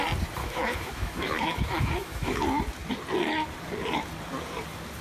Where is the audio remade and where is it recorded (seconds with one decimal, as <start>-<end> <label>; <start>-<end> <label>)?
0.0-0.4 recorded; 0.4-2.4 remade; 2.4-5.0 recorded